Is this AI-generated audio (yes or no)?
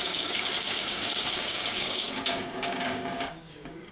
yes